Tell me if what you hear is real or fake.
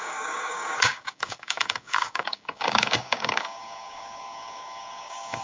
fake